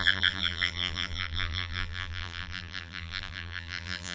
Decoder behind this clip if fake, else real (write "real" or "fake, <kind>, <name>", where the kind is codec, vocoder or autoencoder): fake, vocoder, BigVGAN v2